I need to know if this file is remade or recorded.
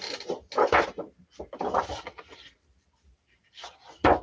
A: recorded